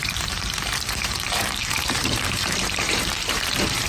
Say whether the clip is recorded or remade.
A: remade